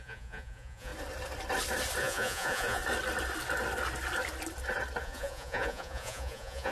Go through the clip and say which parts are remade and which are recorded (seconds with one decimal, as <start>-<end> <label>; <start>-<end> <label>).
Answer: 0.0-0.9 remade; 0.9-2.0 recorded; 2.0-2.8 remade; 2.8-5.0 recorded; 5.0-6.7 remade